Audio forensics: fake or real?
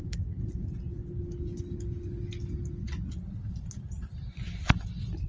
real